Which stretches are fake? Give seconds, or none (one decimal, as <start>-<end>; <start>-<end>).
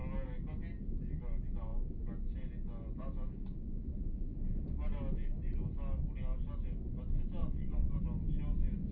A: 7.4-8.0